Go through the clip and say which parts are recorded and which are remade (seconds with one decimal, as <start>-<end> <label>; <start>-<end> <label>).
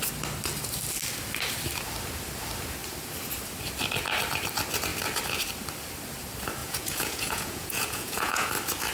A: 0.0-6.6 recorded; 6.6-8.5 remade; 8.5-8.9 recorded